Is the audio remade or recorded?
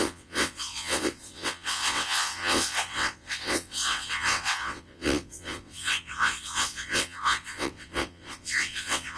remade